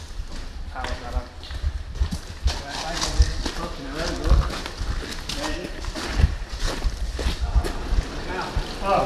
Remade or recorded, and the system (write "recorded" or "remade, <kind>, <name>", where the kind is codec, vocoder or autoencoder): recorded